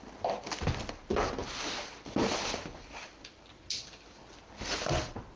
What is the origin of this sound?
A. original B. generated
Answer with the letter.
A